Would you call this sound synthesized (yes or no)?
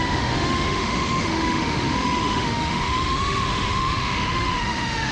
yes